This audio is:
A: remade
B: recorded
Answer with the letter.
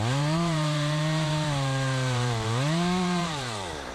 A